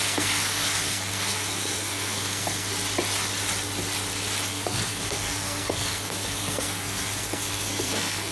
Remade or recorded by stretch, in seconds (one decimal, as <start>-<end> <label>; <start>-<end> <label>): 0.0-2.7 remade; 2.7-4.5 recorded; 4.5-8.3 remade